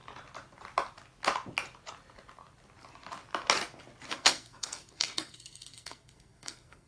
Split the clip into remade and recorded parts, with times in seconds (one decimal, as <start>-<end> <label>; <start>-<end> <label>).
0.0-4.1 recorded; 4.1-6.9 remade